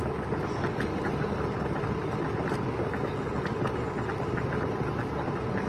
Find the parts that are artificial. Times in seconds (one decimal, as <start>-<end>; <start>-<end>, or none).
none